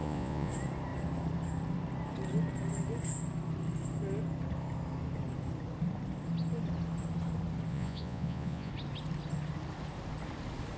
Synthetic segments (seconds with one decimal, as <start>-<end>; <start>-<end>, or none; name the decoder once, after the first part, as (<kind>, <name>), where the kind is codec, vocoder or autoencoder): 0.0-0.5 (vocoder, Vocos); 7.7-8.7